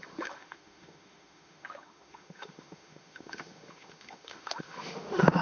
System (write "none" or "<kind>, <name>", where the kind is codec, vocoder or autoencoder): autoencoder, DAC-VAE